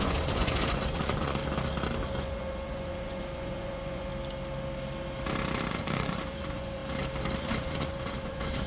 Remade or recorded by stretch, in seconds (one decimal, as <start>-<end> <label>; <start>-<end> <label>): 0.0-1.4 remade; 1.4-2.1 recorded; 2.1-4.1 remade; 4.1-5.7 recorded; 5.7-6.8 remade; 6.8-7.4 recorded; 7.4-8.7 remade